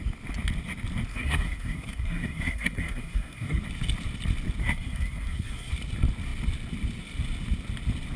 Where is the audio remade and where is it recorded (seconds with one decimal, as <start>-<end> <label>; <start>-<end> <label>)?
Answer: 0.0-1.1 recorded; 1.1-3.6 remade; 3.6-4.6 recorded; 4.6-5.7 remade; 5.7-8.2 recorded